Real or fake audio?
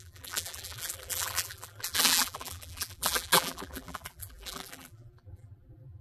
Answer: fake